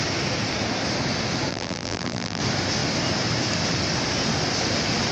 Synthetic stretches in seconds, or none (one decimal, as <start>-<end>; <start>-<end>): 1.5-2.4